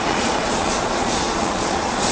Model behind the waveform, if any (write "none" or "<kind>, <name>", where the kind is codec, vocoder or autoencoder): vocoder, Vocos